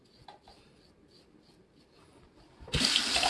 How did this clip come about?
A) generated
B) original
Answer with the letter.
B